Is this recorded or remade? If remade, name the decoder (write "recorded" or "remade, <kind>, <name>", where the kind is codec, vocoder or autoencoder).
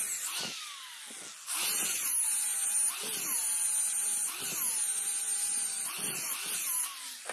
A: recorded